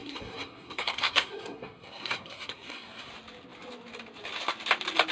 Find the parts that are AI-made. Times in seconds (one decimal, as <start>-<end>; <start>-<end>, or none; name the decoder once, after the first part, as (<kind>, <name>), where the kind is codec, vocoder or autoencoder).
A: 0.0-3.1 (codec, SNAC)